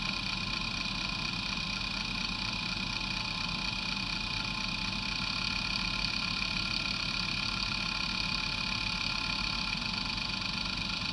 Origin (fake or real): real